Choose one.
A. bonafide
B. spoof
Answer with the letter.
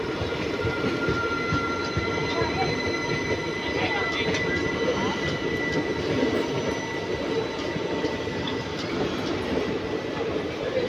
A